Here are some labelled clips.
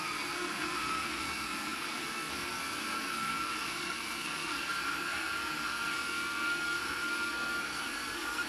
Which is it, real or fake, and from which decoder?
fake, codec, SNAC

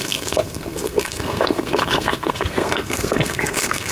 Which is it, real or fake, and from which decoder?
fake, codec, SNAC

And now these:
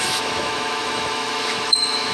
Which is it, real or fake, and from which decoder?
fake, autoencoder, DAC-VAE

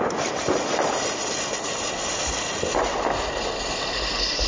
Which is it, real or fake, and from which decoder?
real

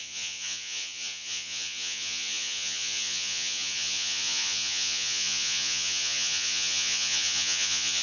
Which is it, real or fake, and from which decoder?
fake, vocoder, Vocos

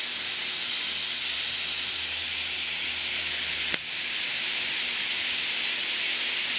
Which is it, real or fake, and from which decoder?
real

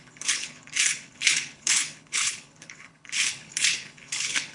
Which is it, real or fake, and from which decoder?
fake, codec, HILCodec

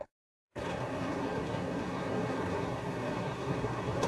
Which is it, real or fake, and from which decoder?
fake, codec, SNAC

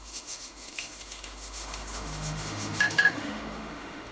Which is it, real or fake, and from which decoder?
fake, autoencoder, DAC-VAE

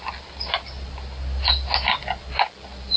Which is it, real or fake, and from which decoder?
real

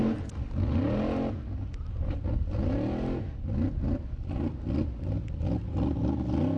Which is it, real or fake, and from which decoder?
real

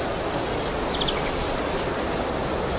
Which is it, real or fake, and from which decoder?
real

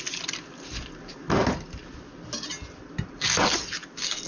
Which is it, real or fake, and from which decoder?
real